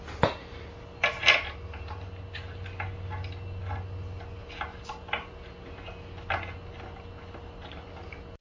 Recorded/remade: recorded